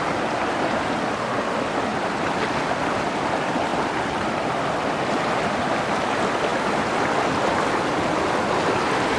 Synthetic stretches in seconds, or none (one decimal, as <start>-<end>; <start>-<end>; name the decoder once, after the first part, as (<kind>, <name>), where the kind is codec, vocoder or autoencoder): none

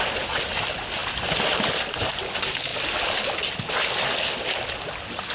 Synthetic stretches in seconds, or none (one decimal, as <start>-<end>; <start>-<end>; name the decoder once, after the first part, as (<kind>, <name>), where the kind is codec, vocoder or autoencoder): none